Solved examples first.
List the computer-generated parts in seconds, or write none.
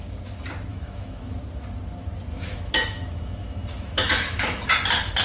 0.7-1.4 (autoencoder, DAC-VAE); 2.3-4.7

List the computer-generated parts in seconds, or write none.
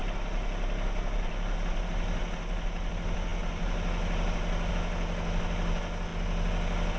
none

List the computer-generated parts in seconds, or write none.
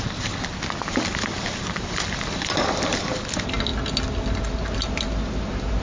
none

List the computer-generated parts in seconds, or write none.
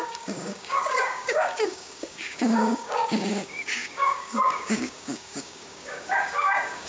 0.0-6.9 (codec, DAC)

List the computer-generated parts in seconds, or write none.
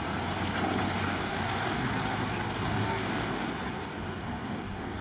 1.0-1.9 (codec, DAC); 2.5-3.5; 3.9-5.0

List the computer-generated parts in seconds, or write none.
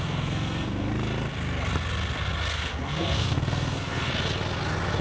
0.0-0.9 (codec, SNAC); 2.5-4.1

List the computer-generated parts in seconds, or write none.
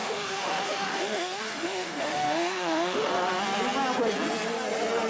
0.0-3.1 (autoencoder, DAC-VAE)